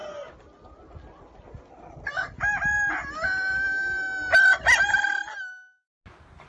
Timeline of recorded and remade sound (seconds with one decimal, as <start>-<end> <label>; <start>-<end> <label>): 0.0-6.5 recorded